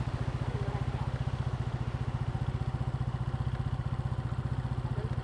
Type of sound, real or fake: real